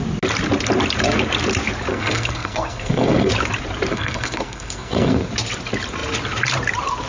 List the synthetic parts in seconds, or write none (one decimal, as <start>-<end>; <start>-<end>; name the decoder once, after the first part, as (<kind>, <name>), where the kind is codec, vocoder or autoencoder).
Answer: 1.9-3.3 (codec, SNAC); 3.9-5.3